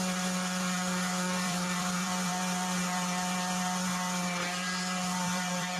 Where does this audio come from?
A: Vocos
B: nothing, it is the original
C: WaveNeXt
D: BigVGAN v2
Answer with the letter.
D